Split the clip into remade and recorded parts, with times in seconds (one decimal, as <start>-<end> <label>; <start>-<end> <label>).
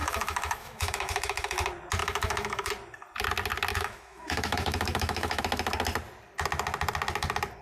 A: 0.0-1.6 remade; 1.6-2.0 recorded; 2.0-2.7 remade; 2.7-3.7 recorded; 3.7-5.4 remade; 5.4-7.6 recorded